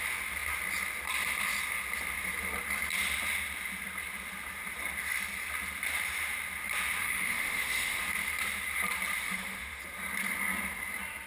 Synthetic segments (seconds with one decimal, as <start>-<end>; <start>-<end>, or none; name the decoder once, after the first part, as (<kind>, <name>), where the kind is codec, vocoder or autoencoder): 7.0-8.0 (autoencoder, DAC-VAE); 9.2-9.8